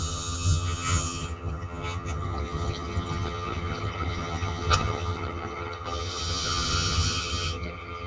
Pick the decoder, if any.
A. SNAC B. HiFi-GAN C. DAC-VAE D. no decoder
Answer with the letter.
B